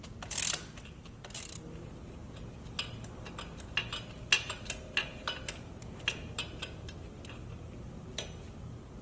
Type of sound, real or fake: real